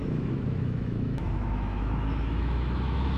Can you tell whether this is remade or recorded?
remade